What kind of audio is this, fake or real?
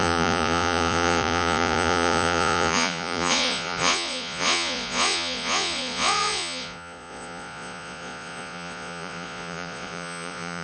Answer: fake